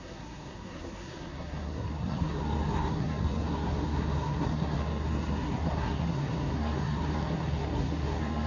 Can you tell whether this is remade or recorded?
remade